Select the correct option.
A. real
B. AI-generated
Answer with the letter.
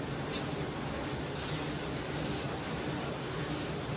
A